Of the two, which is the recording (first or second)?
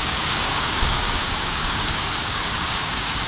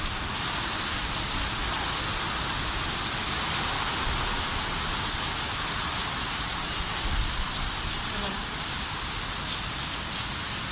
second